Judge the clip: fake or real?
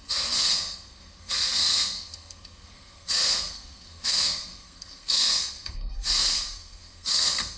fake